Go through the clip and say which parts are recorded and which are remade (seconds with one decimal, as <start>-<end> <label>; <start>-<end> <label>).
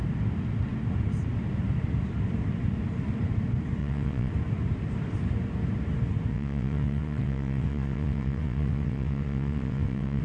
0.0-3.8 recorded; 3.8-4.3 remade; 4.3-6.3 recorded; 6.3-10.2 remade